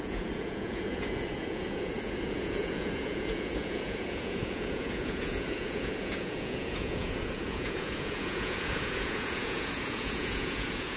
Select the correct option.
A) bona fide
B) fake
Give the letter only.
B